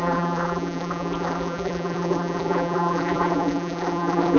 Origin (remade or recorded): remade